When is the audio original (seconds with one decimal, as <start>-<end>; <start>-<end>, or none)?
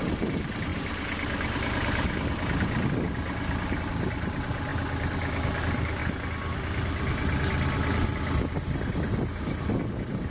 4.7-5.6; 6.0-9.9